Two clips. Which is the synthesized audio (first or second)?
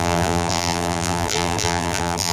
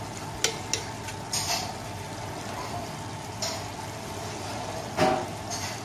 first